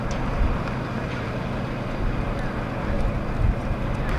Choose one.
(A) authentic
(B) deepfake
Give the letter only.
A